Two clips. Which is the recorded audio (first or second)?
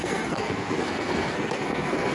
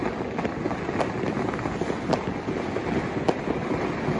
second